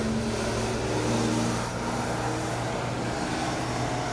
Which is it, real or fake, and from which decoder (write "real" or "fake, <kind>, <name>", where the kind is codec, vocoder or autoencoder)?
real